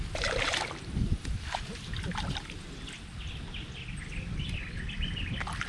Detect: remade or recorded recorded